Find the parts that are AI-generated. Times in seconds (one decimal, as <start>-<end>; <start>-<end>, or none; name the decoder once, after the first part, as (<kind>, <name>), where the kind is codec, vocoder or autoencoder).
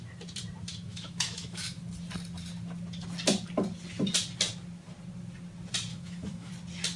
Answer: 0.9-1.8 (autoencoder, DAC-VAE); 5.9-6.5